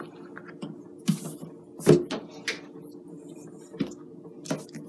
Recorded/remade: recorded